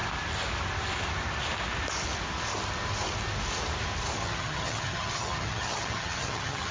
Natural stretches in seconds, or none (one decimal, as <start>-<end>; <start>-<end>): 0.0-4.2